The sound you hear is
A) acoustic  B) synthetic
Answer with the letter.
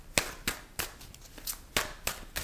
A